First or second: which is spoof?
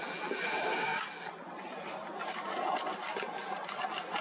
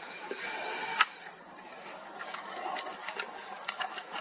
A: second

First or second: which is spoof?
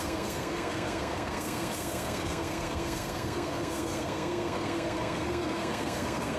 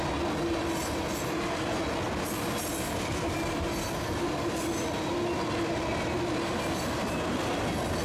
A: first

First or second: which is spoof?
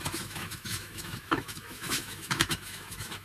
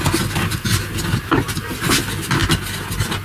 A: first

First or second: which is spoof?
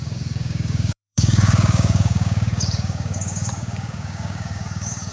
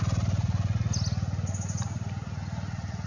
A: first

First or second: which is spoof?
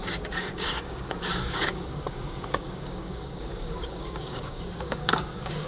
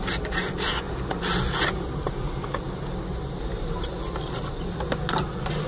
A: first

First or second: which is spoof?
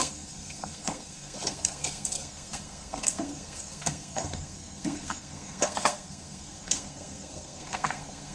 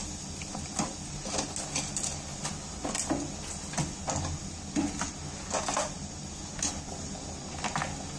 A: first